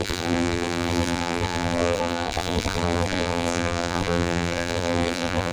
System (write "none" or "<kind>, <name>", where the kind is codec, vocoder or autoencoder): vocoder, BigVGAN v2